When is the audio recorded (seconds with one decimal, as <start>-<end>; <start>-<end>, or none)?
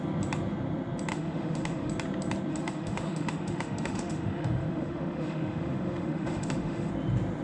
0.0-1.1; 1.9-2.5; 6.9-7.4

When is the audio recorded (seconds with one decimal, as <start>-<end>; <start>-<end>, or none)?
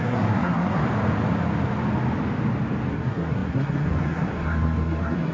0.8-2.9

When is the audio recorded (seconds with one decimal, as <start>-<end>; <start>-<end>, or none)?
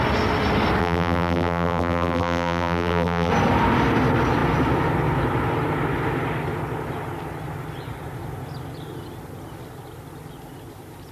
0.0-0.8; 3.3-11.1